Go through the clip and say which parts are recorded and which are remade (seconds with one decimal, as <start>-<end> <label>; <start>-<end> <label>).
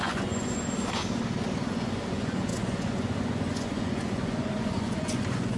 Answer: 0.0-0.6 remade; 0.6-1.7 recorded; 1.7-5.6 remade